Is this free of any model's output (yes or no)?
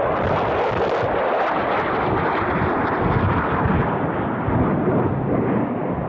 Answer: yes